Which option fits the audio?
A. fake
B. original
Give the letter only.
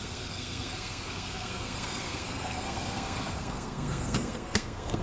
A